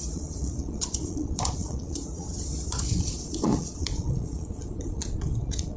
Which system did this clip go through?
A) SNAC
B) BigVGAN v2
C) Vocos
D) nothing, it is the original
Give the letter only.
C